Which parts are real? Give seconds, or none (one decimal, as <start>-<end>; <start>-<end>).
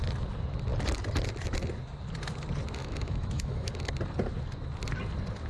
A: 0.0-2.8; 3.7-5.5